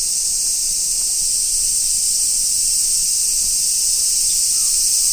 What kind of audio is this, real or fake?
real